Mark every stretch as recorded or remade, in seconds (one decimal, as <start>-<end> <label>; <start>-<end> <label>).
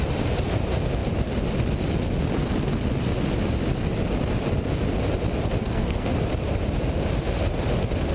0.0-5.6 recorded; 5.6-6.1 remade; 6.1-8.1 recorded